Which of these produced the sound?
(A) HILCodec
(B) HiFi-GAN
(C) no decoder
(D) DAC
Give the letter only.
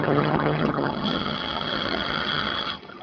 B